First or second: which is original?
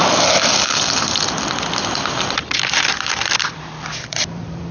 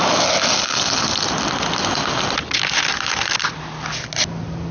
second